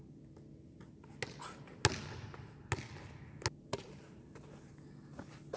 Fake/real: real